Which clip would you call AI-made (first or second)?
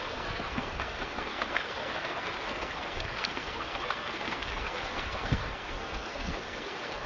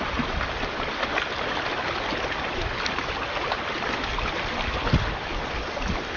first